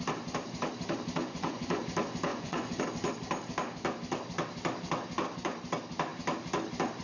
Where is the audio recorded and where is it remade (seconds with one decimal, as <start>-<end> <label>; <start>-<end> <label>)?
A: 0.0-1.2 recorded; 1.2-1.8 remade; 1.8-2.3 recorded; 2.3-2.8 remade; 2.8-7.0 recorded